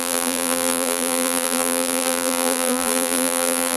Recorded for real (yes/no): no